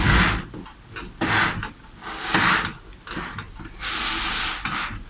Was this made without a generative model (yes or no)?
yes